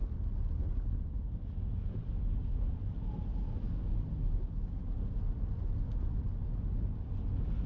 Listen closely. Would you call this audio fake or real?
real